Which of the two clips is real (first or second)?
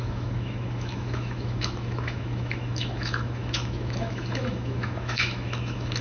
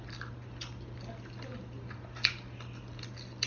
second